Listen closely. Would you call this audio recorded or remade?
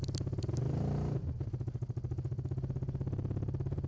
recorded